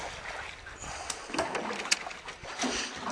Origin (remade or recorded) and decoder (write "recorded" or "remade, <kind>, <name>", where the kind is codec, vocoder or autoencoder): recorded